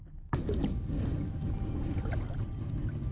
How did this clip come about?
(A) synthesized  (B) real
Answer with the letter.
B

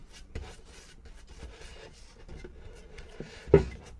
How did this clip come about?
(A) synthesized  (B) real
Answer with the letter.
B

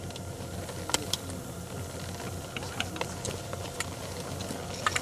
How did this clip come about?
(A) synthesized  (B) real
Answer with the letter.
B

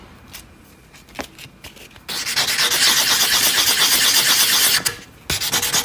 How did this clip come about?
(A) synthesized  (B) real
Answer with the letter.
B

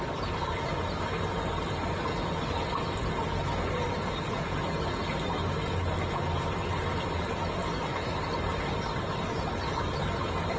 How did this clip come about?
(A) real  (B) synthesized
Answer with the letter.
A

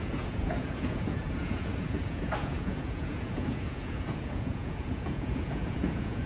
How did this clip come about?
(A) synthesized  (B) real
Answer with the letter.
A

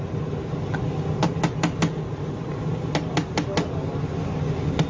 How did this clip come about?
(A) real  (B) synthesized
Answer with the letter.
A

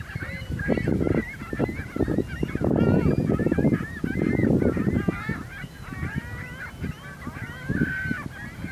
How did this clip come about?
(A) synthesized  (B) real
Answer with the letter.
B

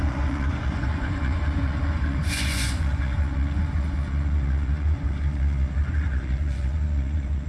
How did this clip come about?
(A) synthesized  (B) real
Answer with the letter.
A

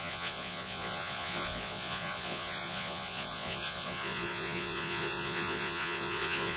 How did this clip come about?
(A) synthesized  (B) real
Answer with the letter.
A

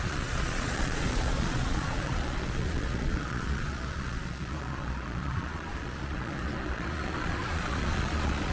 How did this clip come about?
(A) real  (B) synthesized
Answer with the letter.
B